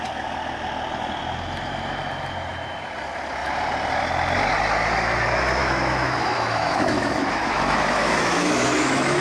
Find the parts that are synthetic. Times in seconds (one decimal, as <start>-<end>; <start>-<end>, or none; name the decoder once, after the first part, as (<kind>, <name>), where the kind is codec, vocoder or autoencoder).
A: 5.6-9.2 (autoencoder, DAC-VAE)